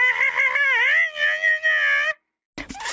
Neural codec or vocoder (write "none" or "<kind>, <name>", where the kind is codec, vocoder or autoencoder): none